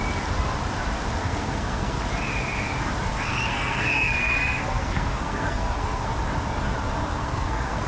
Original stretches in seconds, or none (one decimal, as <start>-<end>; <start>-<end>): 0.0-1.2; 2.0-3.1; 6.1-7.1